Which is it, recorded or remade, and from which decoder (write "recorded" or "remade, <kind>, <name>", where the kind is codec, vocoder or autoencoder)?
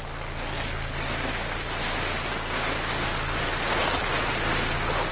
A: recorded